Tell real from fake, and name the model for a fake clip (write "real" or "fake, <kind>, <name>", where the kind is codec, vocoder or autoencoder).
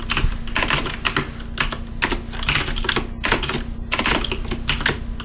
real